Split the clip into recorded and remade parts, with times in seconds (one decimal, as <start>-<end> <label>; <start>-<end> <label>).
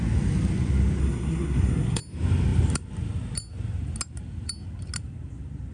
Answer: 0.0-1.0 recorded; 1.0-2.0 remade; 2.0-5.7 recorded